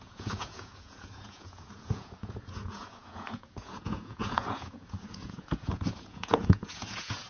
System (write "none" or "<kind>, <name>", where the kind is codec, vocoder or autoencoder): vocoder, Vocos